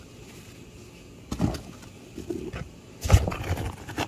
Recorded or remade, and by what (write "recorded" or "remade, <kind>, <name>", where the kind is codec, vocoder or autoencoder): recorded